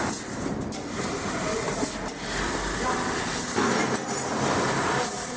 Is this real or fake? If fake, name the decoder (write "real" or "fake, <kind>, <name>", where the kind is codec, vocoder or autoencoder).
real